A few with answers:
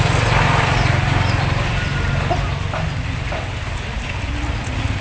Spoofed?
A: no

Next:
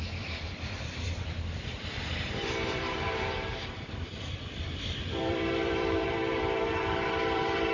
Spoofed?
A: yes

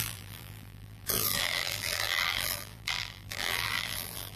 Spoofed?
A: yes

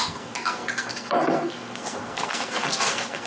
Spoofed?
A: yes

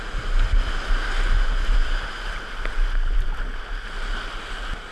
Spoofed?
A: no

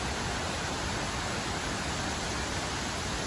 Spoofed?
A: no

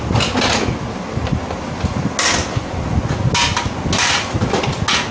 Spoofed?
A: no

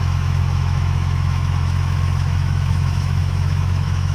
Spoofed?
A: yes